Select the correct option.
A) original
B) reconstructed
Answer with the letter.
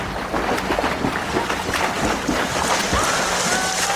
A